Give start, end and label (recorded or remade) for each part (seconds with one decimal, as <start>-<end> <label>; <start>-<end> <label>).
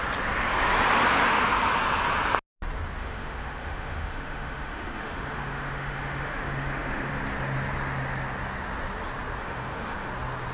0.0-3.0 recorded; 3.0-7.1 remade; 7.1-9.4 recorded; 9.4-10.1 remade; 10.1-10.5 recorded